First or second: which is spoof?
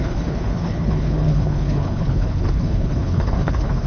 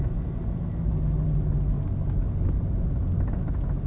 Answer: first